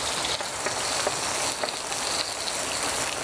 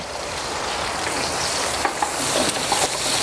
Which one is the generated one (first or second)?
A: second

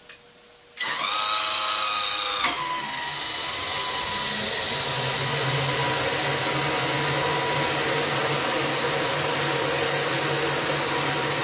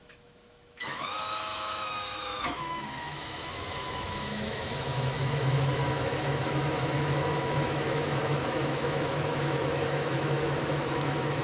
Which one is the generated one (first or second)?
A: second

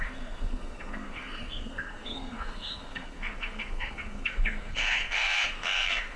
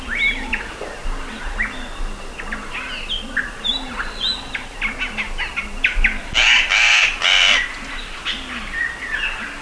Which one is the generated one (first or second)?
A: first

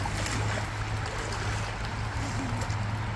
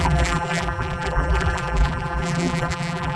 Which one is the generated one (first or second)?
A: second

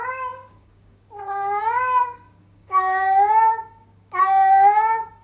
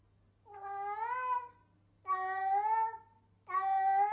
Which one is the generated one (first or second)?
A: first